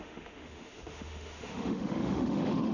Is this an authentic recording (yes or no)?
no